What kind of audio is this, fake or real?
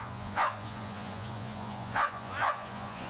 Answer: fake